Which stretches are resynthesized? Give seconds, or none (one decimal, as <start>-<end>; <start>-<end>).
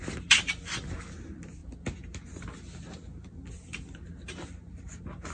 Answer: none